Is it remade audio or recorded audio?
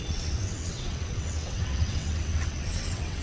remade